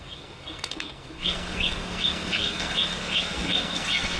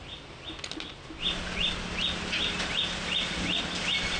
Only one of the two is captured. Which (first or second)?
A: second